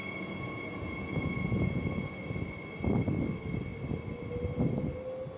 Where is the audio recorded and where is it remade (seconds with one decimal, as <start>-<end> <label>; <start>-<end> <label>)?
0.0-2.1 remade; 2.1-5.4 recorded